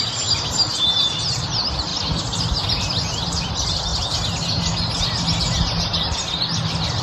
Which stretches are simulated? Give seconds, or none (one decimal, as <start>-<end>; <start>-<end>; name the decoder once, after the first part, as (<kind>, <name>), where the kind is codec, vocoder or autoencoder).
1.9-3.5 (vocoder, BigVGAN v2)